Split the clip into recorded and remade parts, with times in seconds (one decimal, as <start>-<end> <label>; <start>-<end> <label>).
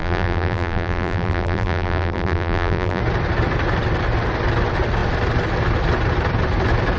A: 0.0-3.0 remade; 3.0-7.0 recorded